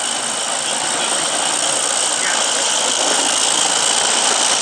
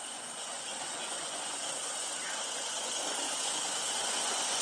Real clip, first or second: first